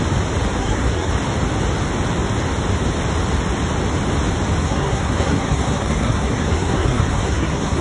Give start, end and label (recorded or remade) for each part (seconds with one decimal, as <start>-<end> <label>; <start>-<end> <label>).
0.0-0.6 recorded; 0.6-1.1 remade; 1.1-4.6 recorded; 4.6-7.8 remade